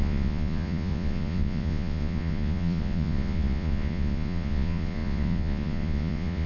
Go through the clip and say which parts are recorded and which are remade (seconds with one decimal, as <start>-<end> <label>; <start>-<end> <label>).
0.0-6.5 remade